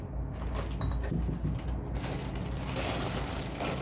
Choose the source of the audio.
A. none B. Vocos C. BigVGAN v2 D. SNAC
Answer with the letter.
A